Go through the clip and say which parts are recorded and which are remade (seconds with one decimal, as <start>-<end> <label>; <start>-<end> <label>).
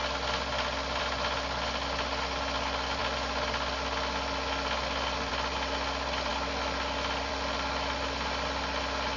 0.0-9.2 recorded